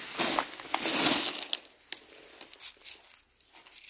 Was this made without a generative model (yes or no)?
yes